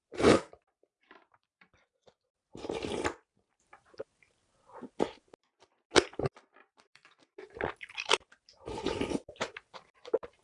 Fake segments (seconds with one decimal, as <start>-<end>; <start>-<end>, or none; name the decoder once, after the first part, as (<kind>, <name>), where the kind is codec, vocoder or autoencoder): 0.0-4.1 (vocoder, BigVGAN v2); 6.7-10.4